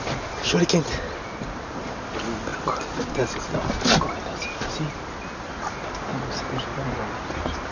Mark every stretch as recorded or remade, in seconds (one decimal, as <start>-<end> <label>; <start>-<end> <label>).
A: 0.0-7.7 recorded

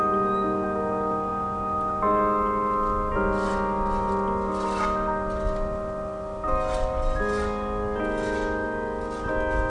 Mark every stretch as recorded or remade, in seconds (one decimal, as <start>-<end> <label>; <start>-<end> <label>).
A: 0.0-9.7 recorded

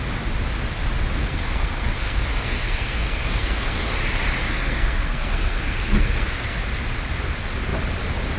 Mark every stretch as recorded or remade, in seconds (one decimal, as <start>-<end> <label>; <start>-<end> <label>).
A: 0.0-1.2 recorded; 1.2-3.9 remade; 3.9-4.4 recorded; 4.4-6.6 remade; 6.6-8.4 recorded